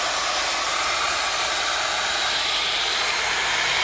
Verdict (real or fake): fake